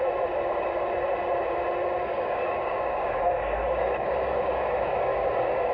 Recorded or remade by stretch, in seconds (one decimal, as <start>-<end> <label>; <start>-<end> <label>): 0.0-2.0 recorded; 2.0-5.7 remade